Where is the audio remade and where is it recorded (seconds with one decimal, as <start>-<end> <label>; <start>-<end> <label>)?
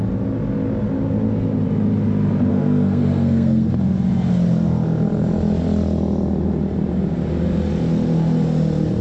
0.0-2.5 recorded; 2.5-3.7 remade; 3.7-9.0 recorded